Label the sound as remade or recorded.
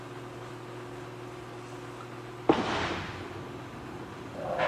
recorded